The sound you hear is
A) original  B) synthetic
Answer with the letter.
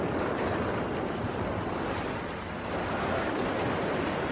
A